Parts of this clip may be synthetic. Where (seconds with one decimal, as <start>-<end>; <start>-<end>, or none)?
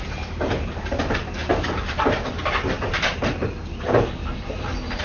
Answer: 1.4-2.0